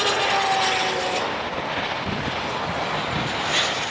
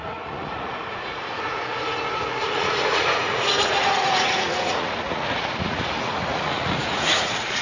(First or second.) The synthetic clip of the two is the second